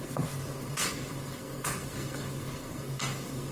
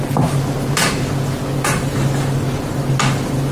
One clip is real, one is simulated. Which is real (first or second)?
second